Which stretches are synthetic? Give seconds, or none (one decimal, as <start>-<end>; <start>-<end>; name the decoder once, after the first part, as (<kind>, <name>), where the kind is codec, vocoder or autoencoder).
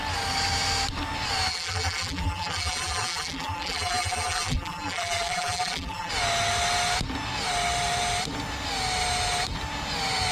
1.5-6.1 (vocoder, BigVGAN v2)